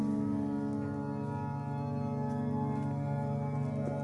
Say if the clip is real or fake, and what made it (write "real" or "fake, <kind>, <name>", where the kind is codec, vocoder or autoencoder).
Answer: real